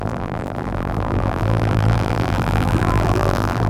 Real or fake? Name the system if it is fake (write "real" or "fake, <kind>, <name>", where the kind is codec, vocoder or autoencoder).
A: fake, vocoder, BigVGAN v2